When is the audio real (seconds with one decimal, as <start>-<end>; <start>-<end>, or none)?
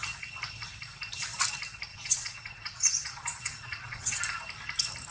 0.0-1.9; 4.2-5.1